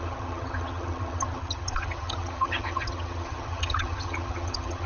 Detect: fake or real fake